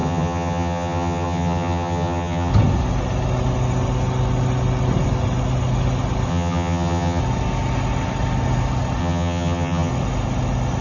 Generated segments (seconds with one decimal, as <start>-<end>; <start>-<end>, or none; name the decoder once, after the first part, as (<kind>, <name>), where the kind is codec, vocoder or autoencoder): 0.0-2.5 (vocoder, HiFi-GAN); 6.3-7.2; 9.0-9.9